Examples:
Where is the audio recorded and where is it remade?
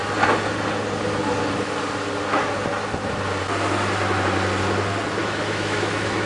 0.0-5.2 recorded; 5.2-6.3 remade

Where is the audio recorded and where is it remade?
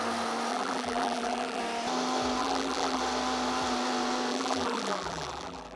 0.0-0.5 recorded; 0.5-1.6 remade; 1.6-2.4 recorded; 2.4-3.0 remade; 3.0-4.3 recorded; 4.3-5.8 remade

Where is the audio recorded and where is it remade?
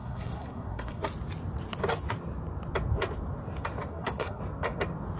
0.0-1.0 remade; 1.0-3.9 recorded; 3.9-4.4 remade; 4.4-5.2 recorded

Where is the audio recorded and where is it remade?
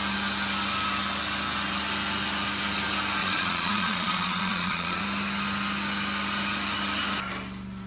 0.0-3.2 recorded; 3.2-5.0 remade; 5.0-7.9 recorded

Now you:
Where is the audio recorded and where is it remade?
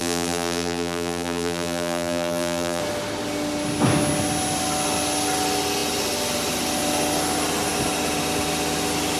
0.0-2.8 remade; 2.8-9.2 recorded